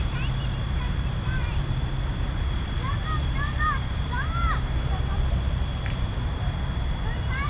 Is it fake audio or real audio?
fake